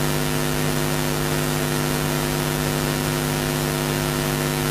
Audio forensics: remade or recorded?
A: recorded